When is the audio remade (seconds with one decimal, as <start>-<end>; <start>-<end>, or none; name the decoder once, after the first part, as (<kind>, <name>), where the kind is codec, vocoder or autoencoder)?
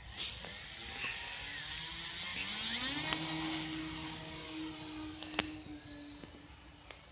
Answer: none